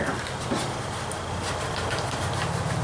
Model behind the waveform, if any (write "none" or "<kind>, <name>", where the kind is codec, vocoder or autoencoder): none